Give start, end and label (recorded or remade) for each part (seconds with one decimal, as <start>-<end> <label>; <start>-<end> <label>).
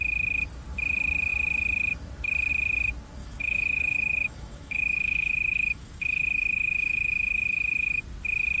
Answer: 0.0-3.2 recorded; 3.2-8.0 remade; 8.0-8.6 recorded